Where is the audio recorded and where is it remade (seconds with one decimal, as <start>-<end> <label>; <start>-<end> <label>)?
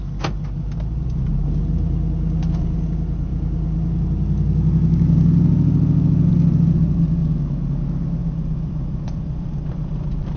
0.0-8.2 recorded; 8.2-10.4 remade